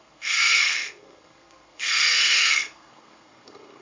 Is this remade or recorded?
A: remade